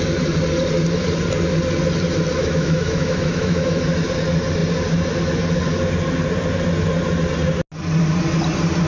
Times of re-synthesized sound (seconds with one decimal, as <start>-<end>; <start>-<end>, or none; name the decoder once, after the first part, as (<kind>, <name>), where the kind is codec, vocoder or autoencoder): 2.4-3.8 (autoencoder, DAC-VAE)